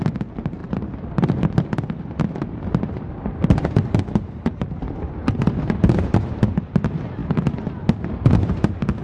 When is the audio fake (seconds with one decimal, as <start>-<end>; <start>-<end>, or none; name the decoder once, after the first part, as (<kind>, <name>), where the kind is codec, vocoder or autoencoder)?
0.0-7.2 (vocoder, BigVGAN v2)